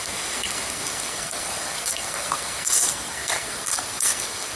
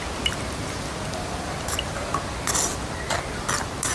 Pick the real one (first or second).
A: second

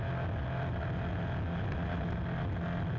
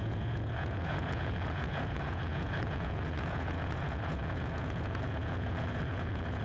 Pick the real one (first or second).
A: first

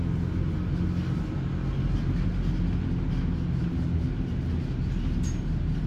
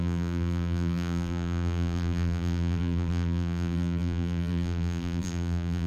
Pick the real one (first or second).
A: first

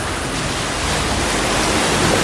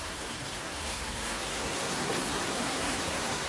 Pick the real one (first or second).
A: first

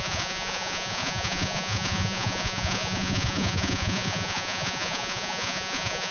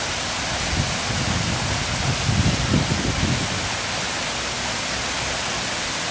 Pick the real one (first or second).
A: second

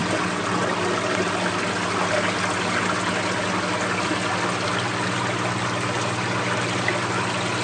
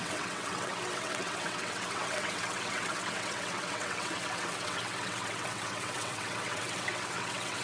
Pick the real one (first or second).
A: first